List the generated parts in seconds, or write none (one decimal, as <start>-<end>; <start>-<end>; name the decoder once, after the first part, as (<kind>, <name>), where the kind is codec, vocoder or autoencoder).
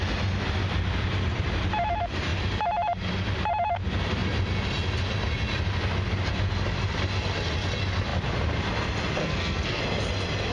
9.2-9.8 (codec, SNAC)